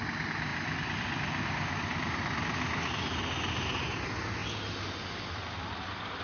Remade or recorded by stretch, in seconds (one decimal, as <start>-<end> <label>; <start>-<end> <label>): 0.0-6.2 recorded